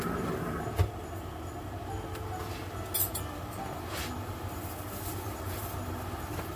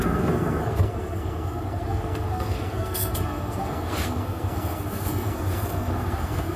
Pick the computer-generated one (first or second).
second